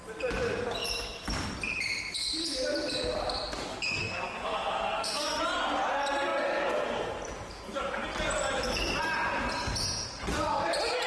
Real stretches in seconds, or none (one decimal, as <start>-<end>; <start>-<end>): 0.0-3.7; 5.4-11.1